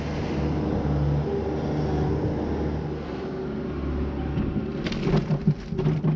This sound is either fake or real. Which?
real